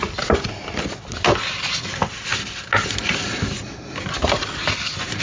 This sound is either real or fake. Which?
real